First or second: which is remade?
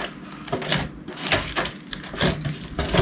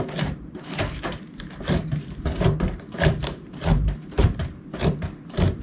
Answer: second